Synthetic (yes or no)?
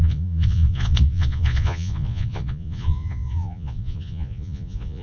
yes